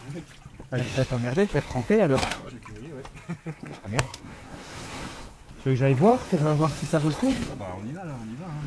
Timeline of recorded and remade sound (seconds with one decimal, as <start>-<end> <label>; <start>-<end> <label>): 0.0-0.8 recorded; 0.8-2.5 remade; 2.5-3.4 recorded; 3.4-5.5 remade; 5.5-6.1 recorded; 6.1-7.6 remade; 7.6-8.7 recorded